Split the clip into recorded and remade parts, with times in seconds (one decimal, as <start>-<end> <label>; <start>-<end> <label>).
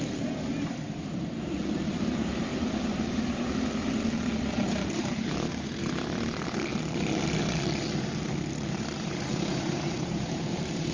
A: 0.0-2.5 remade; 2.5-4.5 recorded; 4.5-6.7 remade; 6.7-8.3 recorded; 8.3-10.9 remade